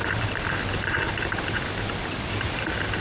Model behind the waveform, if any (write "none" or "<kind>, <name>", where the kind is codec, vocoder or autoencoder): none